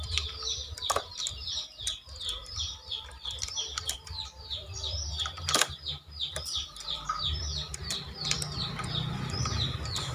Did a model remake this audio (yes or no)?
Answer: yes